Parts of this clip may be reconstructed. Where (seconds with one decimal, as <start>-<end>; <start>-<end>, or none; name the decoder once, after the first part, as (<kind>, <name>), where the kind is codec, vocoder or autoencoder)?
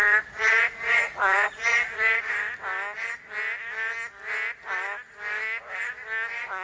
0.0-2.2 (vocoder, Vocos)